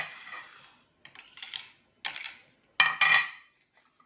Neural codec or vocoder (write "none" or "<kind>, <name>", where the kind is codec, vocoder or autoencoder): none